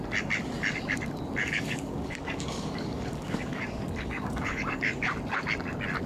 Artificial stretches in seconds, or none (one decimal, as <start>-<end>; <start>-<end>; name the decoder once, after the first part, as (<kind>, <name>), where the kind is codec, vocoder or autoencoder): 1.4-5.1 (codec, DAC)